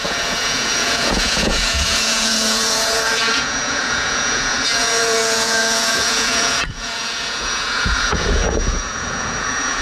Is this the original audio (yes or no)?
no